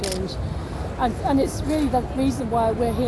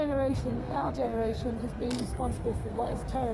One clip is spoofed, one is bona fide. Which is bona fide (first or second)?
first